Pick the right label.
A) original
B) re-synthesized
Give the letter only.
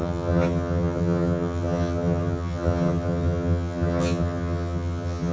B